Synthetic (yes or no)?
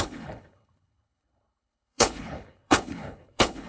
yes